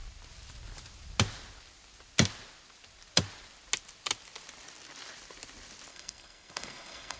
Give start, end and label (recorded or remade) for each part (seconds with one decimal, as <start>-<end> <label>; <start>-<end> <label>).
0.0-5.9 recorded; 5.9-7.2 remade

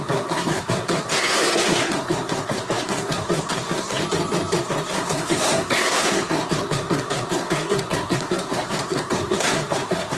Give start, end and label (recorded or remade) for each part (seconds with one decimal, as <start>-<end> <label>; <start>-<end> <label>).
0.0-4.0 remade; 4.0-4.6 recorded; 4.6-10.2 remade

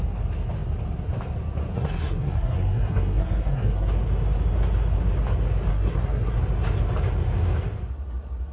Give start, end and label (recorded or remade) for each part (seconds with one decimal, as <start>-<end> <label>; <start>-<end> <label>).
0.0-1.7 recorded; 1.7-3.9 remade; 3.9-5.7 recorded; 5.7-6.4 remade; 6.4-8.5 recorded

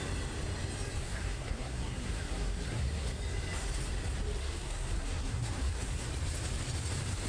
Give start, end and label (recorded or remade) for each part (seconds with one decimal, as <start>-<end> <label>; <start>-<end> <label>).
0.0-1.0 recorded; 1.0-3.2 remade; 3.2-4.4 recorded; 4.4-6.1 remade; 6.1-7.3 recorded

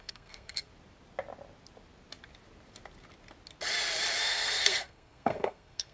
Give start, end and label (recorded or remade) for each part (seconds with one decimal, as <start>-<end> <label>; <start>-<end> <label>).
0.0-0.7 remade; 0.7-4.2 recorded; 4.2-5.9 remade